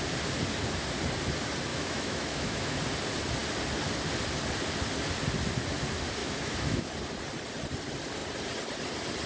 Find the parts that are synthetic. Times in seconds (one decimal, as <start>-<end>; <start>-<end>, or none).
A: 1.7-2.8; 6.2-6.9